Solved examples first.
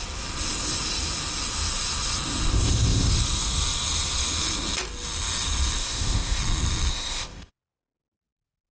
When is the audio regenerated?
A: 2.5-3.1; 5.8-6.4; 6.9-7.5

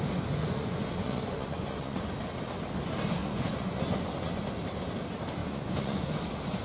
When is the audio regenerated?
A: 0.4-2.1; 3.2-4.4; 5.4-6.1

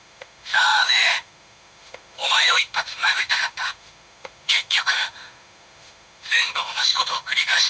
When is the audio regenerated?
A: 0.0-7.7